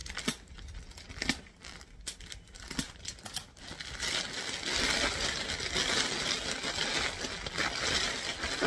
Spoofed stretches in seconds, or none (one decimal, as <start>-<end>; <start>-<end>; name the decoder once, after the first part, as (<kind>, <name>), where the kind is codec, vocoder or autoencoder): none